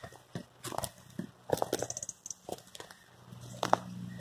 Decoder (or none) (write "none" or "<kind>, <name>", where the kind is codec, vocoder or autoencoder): none